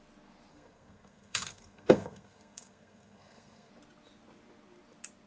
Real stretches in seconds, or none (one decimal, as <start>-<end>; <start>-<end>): 0.0-0.5; 3.7-5.3

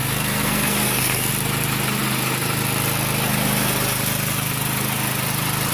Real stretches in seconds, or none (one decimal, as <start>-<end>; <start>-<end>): 1.3-5.7

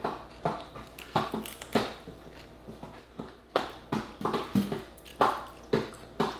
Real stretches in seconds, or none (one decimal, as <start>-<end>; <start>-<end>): 0.0-0.8; 1.3-3.0; 3.6-6.4

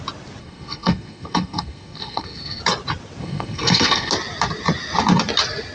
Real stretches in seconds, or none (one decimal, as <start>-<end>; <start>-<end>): 0.0-0.4; 2.6-3.2; 4.1-5.7